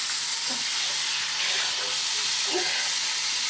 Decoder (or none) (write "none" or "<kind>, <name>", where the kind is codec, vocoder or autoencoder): none